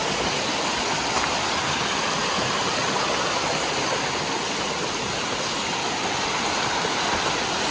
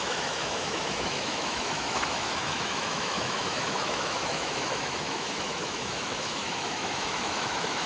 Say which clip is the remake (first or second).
second